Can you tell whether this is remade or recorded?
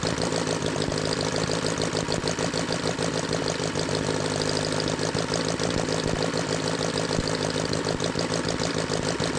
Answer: recorded